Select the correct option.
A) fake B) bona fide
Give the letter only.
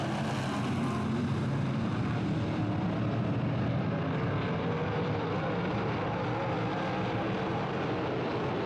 B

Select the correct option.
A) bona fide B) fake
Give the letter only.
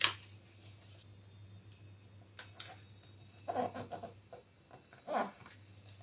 A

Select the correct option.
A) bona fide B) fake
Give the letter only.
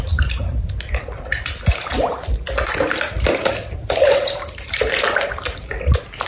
A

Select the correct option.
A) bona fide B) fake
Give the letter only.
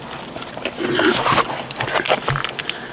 A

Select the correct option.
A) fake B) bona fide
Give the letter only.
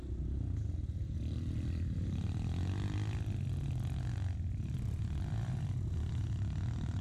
B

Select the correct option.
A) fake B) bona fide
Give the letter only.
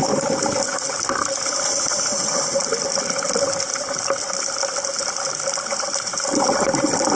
B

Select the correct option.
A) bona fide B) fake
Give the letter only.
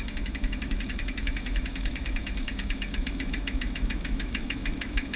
B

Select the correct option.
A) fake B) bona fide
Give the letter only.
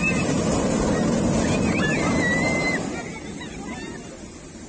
B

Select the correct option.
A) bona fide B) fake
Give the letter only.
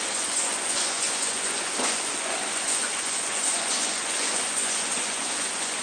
B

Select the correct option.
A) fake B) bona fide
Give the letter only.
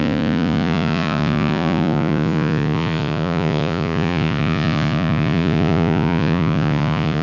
A